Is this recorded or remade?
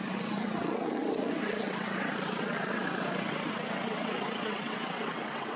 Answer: remade